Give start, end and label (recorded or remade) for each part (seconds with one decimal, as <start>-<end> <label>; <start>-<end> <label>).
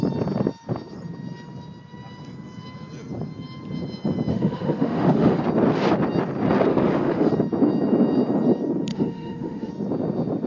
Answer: 0.0-4.3 recorded; 4.3-5.4 remade; 5.4-6.7 recorded; 6.7-7.3 remade; 7.3-8.9 recorded; 8.9-9.7 remade; 9.7-10.5 recorded